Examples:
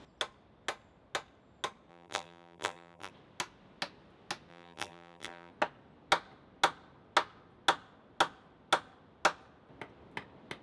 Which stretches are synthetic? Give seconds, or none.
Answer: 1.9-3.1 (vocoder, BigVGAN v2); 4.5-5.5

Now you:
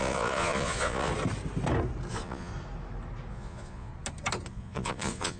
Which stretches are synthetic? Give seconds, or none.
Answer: 0.0-1.1 (vocoder, Vocos); 2.1-2.5; 3.3-3.9; 4.5-5.4

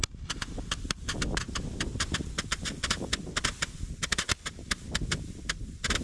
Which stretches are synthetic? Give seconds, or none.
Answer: none

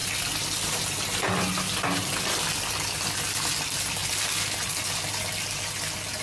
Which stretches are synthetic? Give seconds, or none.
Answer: none